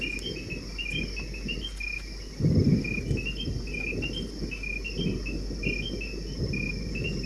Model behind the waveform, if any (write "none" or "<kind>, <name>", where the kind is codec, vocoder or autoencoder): none